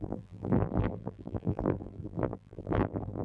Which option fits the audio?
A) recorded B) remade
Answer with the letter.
B